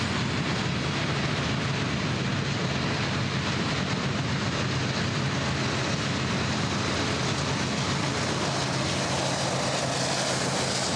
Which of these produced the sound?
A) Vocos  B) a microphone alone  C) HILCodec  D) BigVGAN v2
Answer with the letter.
B